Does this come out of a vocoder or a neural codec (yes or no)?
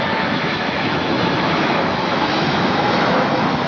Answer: yes